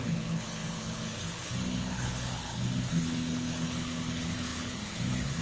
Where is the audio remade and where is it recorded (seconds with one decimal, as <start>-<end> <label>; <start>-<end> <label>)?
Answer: 0.0-5.4 remade